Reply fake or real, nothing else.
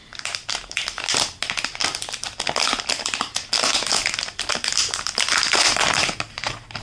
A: real